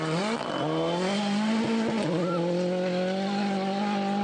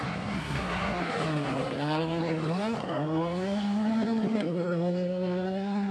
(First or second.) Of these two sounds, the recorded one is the first